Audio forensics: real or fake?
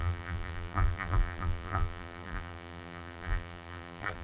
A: fake